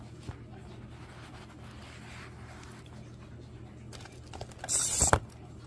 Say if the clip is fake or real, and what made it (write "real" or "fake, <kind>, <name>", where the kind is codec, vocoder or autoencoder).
real